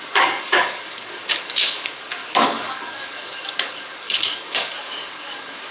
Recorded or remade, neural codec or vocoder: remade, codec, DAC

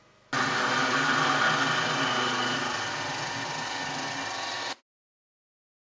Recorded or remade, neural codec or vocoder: recorded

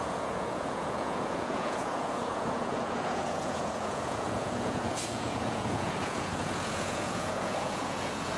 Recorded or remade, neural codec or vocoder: remade, vocoder, Vocos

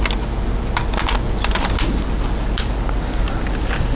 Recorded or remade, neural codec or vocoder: recorded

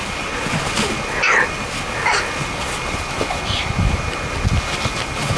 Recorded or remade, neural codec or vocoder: recorded